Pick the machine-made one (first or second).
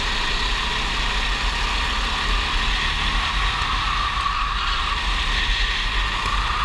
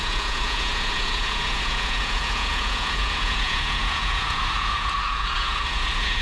second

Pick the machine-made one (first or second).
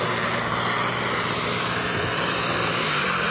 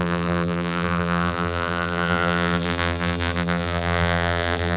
second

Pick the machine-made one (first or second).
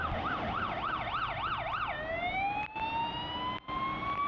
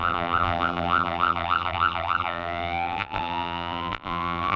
second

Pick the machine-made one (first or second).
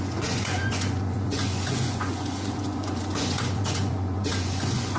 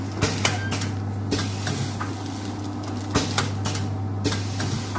first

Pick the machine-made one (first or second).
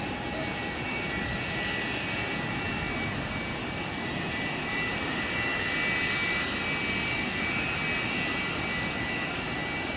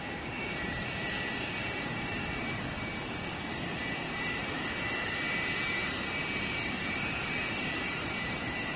second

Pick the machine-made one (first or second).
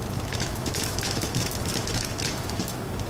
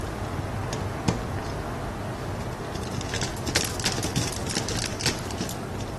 first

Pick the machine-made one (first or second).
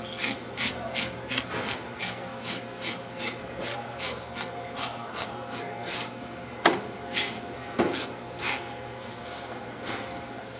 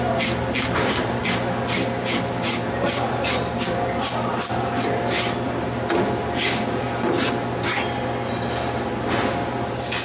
first